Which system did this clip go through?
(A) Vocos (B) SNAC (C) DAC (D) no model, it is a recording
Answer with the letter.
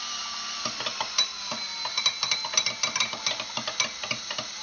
D